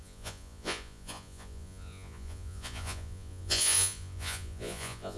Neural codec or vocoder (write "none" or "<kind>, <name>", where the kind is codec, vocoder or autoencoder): vocoder, Vocos